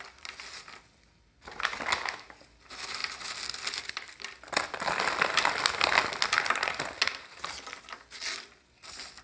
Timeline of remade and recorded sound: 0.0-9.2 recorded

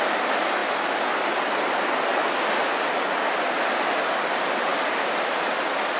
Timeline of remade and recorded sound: 0.0-6.0 recorded

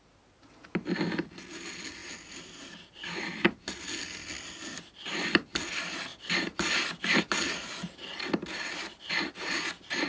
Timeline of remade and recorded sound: 0.0-10.1 recorded

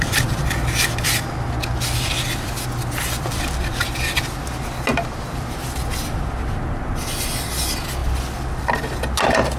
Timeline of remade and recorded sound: 0.0-9.6 recorded